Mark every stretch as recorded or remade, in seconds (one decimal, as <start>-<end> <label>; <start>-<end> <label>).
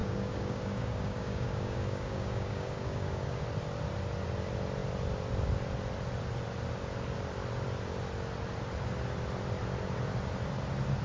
0.0-3.4 remade; 3.4-11.0 recorded